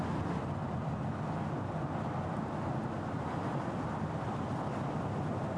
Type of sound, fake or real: real